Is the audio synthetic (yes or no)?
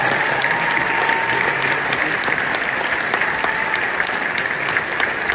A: no